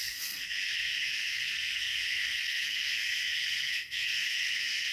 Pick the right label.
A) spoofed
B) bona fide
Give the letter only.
A